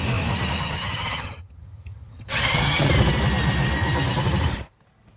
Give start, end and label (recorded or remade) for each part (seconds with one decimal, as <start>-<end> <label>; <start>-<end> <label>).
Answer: 0.0-0.6 recorded; 0.6-2.9 remade; 2.9-5.2 recorded